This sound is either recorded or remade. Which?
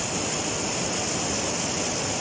recorded